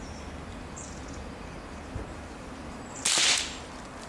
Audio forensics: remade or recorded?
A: recorded